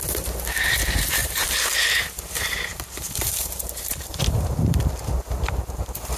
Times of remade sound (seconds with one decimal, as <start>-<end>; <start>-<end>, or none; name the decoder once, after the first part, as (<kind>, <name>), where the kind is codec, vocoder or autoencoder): 1.2-4.9 (vocoder, BigVGAN v2)